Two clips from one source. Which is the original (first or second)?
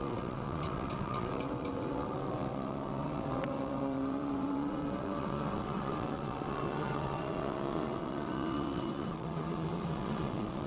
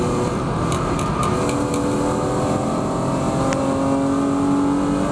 second